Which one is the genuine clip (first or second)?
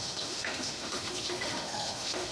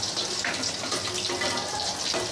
second